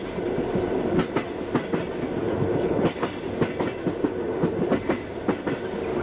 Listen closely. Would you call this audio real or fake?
real